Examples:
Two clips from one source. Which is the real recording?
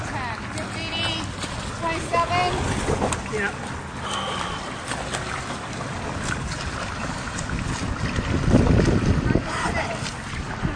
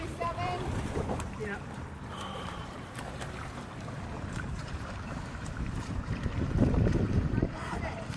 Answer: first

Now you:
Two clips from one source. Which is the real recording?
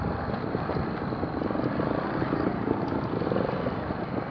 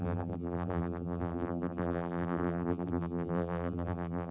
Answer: first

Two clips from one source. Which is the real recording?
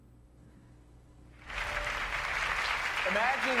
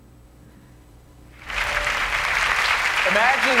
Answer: first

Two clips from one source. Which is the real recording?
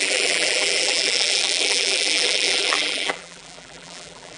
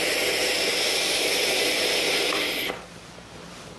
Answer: second